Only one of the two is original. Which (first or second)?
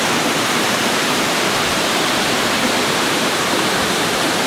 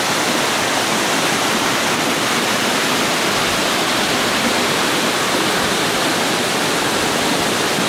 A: second